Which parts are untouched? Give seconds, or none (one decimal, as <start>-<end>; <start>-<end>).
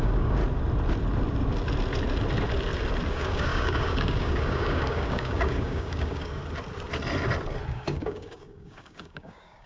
0.4-3.1; 6.4-7.7